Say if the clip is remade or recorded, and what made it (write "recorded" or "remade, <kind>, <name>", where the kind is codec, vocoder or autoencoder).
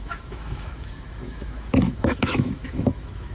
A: remade, autoencoder, DAC-VAE